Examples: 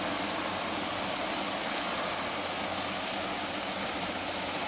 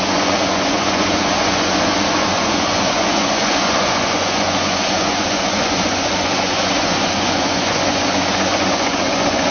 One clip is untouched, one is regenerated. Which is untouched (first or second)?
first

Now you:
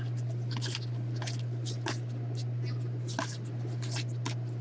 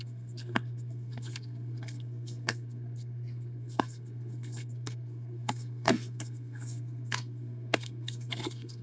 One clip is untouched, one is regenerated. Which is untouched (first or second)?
first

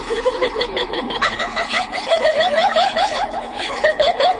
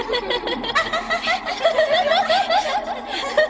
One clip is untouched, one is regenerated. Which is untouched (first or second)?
second